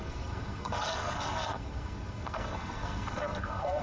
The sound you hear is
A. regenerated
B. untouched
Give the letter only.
A